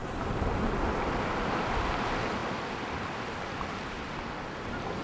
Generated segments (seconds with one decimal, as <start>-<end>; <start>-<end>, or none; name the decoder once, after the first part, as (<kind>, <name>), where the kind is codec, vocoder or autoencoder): 0.0-0.5 (vocoder, BigVGAN v2)